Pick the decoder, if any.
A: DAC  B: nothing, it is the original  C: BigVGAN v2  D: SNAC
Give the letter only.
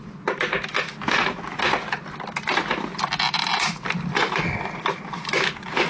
B